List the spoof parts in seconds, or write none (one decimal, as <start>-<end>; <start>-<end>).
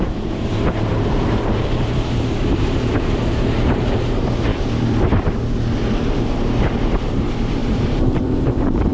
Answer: 0.0-4.5; 6.3-8.9